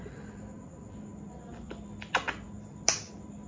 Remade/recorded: recorded